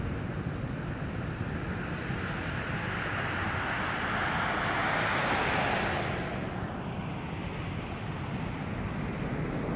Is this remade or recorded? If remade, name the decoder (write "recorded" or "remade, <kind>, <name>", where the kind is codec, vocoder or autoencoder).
recorded